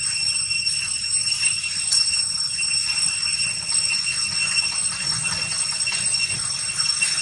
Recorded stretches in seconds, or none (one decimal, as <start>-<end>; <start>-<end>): 0.0-2.8; 6.3-7.2